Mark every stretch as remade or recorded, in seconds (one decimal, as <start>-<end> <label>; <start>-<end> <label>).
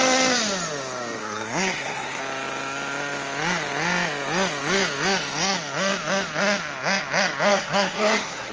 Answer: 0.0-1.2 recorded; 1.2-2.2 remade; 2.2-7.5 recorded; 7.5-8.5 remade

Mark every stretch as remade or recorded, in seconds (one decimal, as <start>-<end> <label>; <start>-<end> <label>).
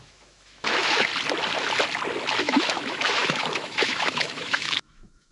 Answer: 0.0-1.1 remade; 1.1-2.4 recorded; 2.4-5.3 remade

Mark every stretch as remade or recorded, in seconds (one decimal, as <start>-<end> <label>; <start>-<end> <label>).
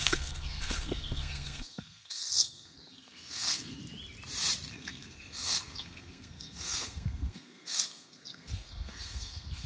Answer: 0.0-3.8 remade; 3.8-4.7 recorded; 4.7-9.7 remade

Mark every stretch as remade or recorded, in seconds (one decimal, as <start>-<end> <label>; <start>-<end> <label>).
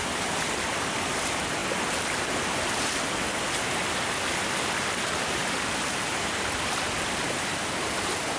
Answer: 0.0-8.4 recorded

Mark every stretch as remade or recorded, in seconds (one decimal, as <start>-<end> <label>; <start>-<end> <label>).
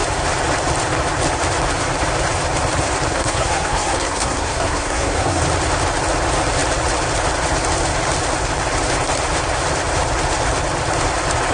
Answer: 0.0-3.1 recorded; 3.1-5.4 remade; 5.4-11.5 recorded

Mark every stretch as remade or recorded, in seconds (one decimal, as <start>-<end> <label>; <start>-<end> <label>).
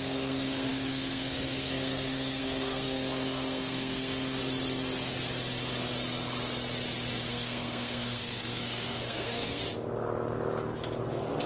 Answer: 0.0-4.4 remade; 4.4-7.3 recorded; 7.3-9.6 remade; 9.6-11.5 recorded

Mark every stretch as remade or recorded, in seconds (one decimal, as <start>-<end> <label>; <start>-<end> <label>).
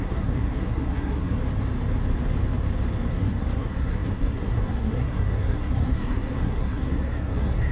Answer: 0.0-1.4 remade; 1.4-3.1 recorded; 3.1-7.7 remade